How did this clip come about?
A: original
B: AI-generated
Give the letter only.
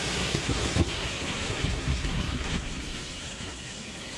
B